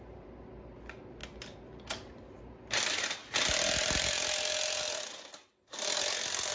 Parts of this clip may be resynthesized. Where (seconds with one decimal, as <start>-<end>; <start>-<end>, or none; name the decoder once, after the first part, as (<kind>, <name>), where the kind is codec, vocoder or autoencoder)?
none